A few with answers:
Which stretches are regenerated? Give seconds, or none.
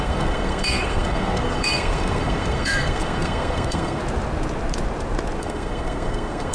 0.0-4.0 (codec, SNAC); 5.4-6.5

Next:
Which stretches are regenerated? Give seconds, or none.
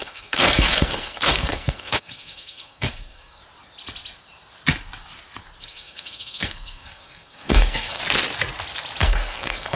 0.0-3.4 (codec, SNAC); 5.6-8.0; 9.0-9.8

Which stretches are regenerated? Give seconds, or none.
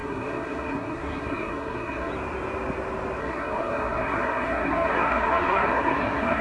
0.0-2.1 (codec, SNAC); 3.2-6.4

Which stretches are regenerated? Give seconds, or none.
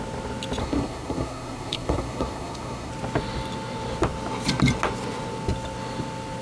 0.6-2.9 (codec, SNAC)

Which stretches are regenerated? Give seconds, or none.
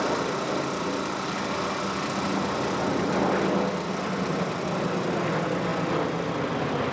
none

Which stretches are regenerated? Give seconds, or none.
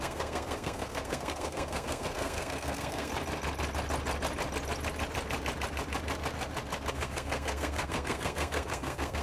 0.0-3.1 (codec, SNAC); 6.9-9.2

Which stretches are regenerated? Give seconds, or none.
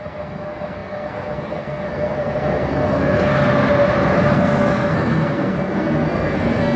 0.0-3.3 (codec, SNAC); 4.3-6.8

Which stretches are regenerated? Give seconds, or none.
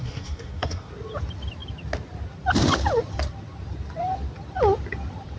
0.0-0.9 (codec, SNAC)